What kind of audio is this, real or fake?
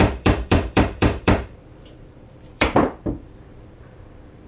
fake